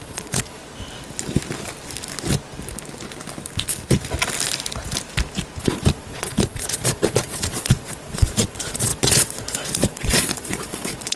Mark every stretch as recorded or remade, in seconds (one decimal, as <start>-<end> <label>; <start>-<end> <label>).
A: 0.0-0.6 remade; 0.6-5.6 recorded; 5.6-11.2 remade